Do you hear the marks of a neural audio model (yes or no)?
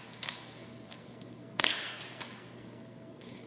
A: yes